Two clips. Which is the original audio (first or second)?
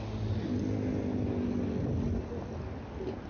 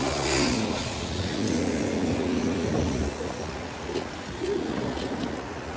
first